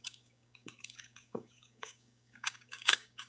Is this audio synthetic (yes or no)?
yes